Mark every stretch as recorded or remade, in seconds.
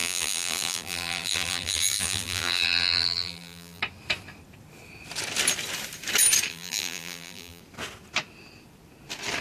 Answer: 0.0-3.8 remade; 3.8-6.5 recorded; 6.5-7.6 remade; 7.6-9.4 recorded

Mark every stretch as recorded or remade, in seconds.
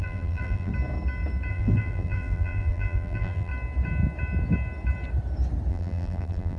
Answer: 0.0-0.7 remade; 0.7-1.5 recorded; 1.5-3.5 remade; 3.5-5.7 recorded; 5.7-6.6 remade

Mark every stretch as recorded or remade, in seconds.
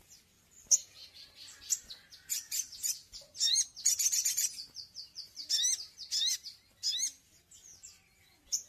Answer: 0.0-3.0 recorded; 3.0-5.5 remade; 5.5-8.7 recorded